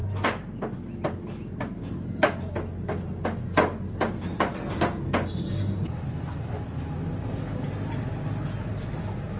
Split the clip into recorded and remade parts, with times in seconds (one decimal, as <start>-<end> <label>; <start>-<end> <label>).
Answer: 0.0-9.4 recorded